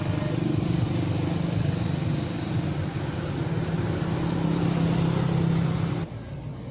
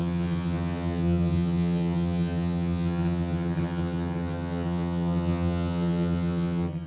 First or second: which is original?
first